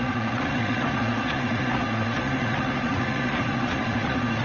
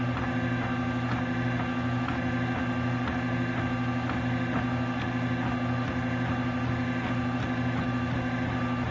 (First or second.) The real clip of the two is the second